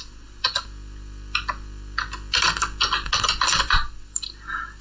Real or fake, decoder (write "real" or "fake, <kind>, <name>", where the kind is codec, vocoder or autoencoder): real